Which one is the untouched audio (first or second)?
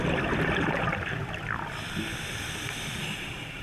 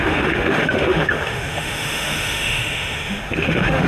first